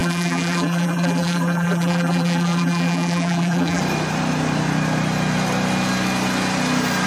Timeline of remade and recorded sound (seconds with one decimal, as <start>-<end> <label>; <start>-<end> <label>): 0.0-3.8 remade; 3.8-7.1 recorded